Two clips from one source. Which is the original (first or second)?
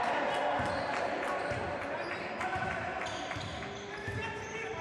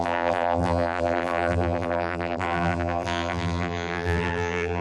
first